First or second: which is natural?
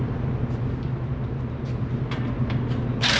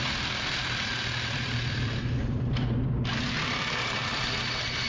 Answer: first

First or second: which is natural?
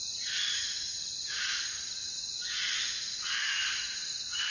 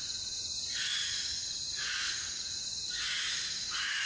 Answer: second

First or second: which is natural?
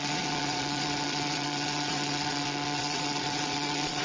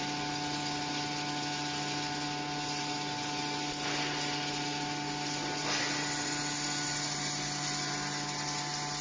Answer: second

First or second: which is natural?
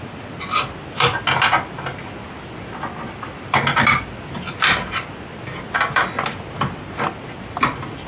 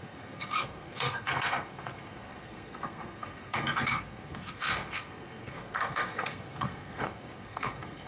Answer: first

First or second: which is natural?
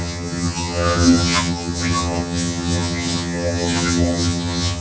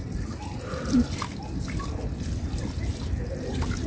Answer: second